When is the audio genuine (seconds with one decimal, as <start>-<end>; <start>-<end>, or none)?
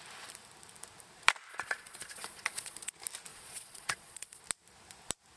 0.0-1.5; 2.9-3.3; 4.4-5.4